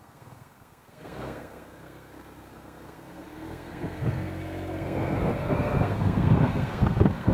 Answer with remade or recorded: remade